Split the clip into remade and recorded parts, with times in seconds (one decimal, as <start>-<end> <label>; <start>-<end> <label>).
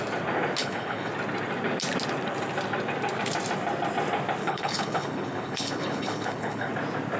0.0-0.6 recorded; 0.6-1.1 remade; 1.1-4.4 recorded; 4.4-6.7 remade; 6.7-7.2 recorded